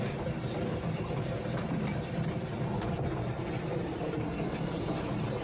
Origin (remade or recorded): remade